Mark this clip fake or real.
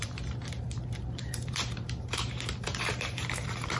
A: fake